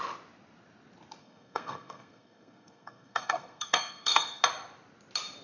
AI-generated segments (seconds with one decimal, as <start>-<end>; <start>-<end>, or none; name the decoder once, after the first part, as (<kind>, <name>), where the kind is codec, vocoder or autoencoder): 1.2-4.4 (codec, SNAC)